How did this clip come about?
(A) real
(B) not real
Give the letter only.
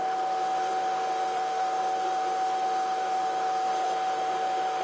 B